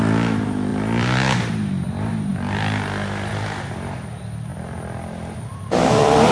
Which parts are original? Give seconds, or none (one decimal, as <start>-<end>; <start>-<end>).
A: 0.0-0.7; 1.5-4.5